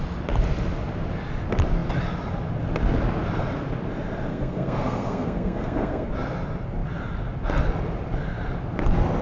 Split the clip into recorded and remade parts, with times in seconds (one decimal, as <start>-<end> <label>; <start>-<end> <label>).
0.0-4.3 recorded; 4.3-6.1 remade; 6.1-9.2 recorded